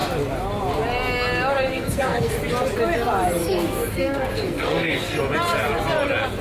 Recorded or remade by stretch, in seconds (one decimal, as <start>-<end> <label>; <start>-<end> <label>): 0.0-1.7 recorded; 1.7-2.4 remade; 2.4-3.4 recorded; 3.4-5.2 remade; 5.2-6.4 recorded